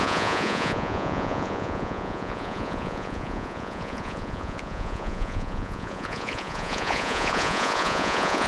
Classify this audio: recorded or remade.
remade